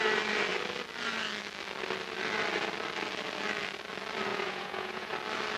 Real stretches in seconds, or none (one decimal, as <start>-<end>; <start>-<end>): 0.0-4.3; 5.1-5.6